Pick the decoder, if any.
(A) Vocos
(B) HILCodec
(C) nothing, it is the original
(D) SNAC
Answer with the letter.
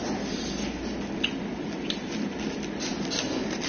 C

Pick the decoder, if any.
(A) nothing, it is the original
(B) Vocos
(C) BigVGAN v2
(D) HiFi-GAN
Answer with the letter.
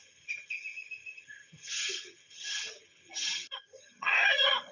D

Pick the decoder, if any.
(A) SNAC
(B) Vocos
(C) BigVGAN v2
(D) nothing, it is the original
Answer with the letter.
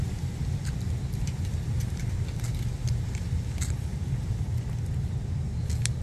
D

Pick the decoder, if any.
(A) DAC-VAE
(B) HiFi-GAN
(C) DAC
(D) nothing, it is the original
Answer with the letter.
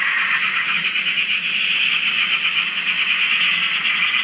D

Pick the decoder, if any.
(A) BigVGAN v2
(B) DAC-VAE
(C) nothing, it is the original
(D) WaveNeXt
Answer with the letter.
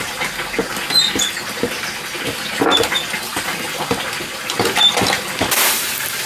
C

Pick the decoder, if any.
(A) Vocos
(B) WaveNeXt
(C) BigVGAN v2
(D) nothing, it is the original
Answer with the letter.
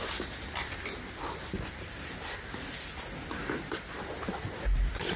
D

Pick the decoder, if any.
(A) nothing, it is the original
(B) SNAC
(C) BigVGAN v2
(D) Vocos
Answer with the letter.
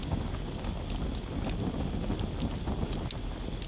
A